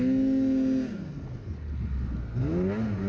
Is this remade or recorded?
recorded